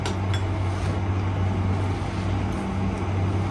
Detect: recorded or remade recorded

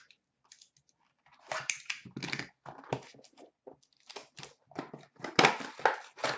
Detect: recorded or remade recorded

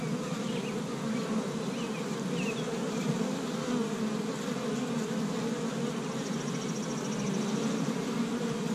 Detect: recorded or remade recorded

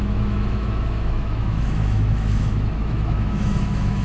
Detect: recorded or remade remade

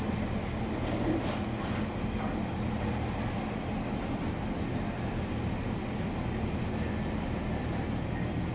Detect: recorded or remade recorded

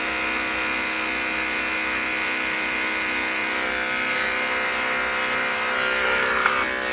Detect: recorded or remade recorded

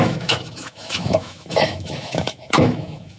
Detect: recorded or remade remade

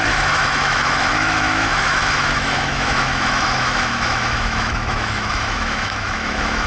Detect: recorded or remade remade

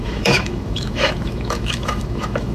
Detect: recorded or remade remade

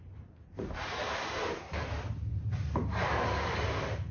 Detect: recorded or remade recorded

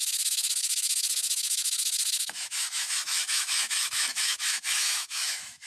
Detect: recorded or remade remade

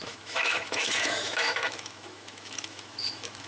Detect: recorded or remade remade